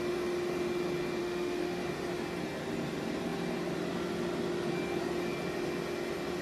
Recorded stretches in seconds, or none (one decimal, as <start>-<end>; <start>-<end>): 0.0-1.2; 1.8-6.4